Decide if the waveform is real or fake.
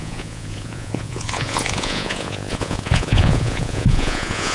fake